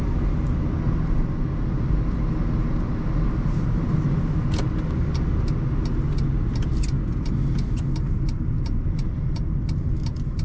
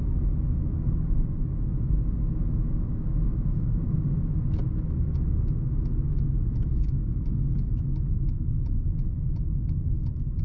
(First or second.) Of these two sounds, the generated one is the second